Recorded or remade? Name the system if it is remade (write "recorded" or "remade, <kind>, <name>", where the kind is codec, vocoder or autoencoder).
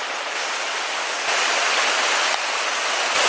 recorded